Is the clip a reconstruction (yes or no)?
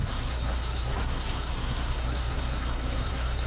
yes